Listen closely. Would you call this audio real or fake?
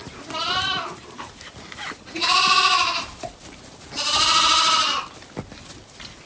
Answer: real